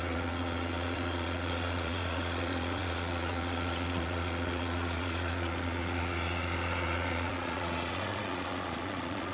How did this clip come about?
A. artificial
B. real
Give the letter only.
A